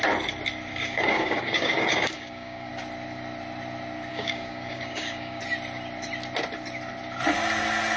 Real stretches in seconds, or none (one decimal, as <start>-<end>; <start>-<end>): 0.0-0.7; 2.7-4.1; 5.4-8.0